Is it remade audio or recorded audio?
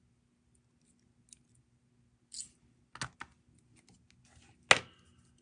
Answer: recorded